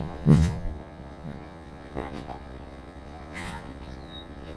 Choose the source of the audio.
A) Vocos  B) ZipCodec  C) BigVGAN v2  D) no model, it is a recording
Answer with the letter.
A